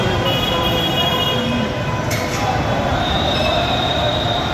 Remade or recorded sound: remade